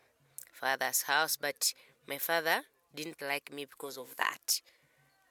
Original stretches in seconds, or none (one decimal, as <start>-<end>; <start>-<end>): 0.0-3.7; 4.4-5.3